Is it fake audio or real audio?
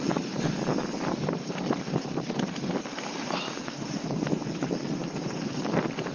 fake